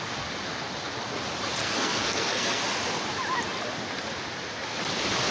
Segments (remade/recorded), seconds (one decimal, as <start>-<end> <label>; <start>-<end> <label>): 0.0-1.6 recorded; 1.6-2.6 remade; 2.6-5.3 recorded